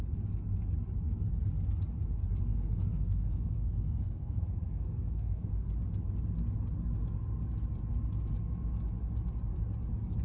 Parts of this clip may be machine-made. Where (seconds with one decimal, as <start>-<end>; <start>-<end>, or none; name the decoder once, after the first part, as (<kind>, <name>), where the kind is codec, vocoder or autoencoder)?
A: 2.5-5.7 (codec, SNAC)

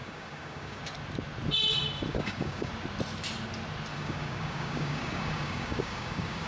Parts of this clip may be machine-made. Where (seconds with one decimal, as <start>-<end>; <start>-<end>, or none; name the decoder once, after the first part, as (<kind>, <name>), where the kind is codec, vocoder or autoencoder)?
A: 0.0-0.8 (codec, DAC); 2.1-2.7; 3.9-6.5